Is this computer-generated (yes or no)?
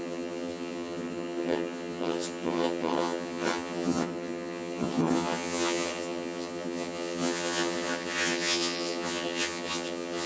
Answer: yes